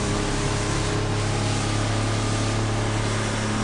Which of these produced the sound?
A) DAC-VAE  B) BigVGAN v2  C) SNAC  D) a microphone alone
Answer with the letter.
D